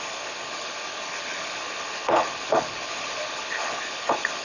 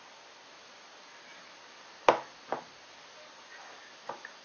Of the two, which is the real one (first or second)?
second